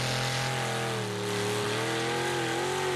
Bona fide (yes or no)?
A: yes